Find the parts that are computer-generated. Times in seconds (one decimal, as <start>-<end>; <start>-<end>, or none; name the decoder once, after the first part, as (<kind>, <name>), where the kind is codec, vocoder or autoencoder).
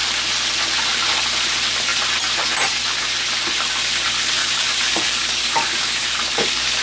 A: 4.4-6.8 (codec, DAC)